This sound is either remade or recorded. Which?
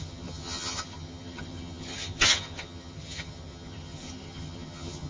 remade